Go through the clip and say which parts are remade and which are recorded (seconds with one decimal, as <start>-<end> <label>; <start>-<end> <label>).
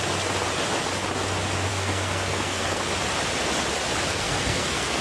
0.0-1.7 recorded; 1.7-2.9 remade; 2.9-4.1 recorded; 4.1-5.0 remade